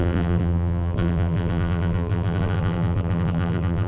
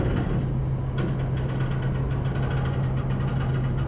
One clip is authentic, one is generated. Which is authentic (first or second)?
second